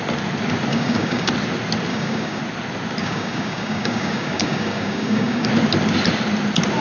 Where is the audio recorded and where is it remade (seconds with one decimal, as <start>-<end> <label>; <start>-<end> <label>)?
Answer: 0.0-0.7 recorded; 0.7-1.3 remade; 1.3-1.9 recorded; 1.9-2.4 remade; 2.4-3.0 recorded; 3.0-5.5 remade; 5.5-6.8 recorded